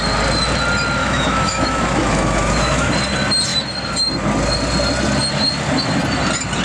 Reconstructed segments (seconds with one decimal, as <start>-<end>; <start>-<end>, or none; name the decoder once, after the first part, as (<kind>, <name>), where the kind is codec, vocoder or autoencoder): 1.0-2.9 (autoencoder, DAC-VAE)

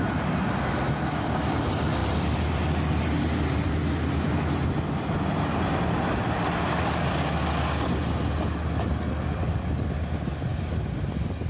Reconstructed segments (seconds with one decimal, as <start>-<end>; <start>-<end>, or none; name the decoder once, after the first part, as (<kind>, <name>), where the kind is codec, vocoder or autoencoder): 2.0-2.9 (vocoder, BigVGAN v2)

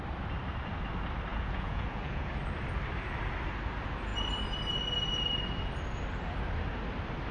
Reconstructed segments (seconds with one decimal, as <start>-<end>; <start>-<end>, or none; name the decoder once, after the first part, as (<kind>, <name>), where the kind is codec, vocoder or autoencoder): 1.3-2.3 (vocoder, Vocos)

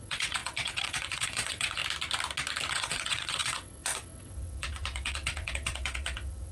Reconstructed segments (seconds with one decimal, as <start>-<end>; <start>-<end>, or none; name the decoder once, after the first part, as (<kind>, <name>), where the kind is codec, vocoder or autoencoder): 0.0-1.8 (vocoder, WaveNeXt); 2.7-6.5

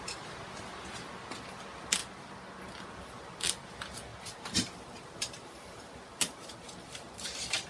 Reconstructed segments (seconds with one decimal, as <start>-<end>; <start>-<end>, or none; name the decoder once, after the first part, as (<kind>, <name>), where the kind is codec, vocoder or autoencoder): 4.1-7.3 (vocoder, BigVGAN v2)

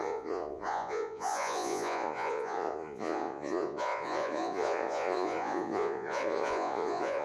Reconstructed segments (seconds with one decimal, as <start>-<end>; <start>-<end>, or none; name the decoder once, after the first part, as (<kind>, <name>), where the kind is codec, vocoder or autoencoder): 0.0-7.2 (vocoder, Vocos)

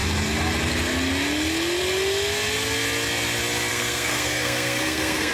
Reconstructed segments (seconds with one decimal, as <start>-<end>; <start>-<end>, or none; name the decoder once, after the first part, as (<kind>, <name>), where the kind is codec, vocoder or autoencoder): 3.7-5.3 (codec, SNAC)